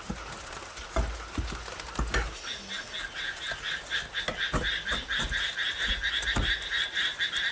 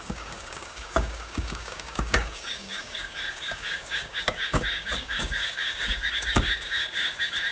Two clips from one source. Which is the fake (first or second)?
second